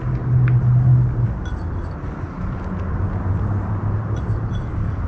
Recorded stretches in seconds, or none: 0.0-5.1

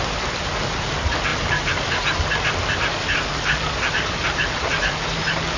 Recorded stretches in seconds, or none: 0.0-5.6

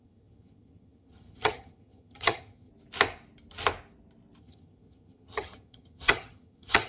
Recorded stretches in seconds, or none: 2.7-4.4